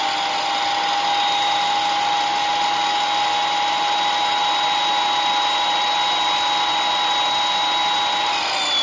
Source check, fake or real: real